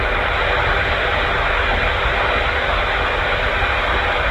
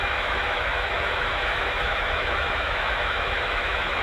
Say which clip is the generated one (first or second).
second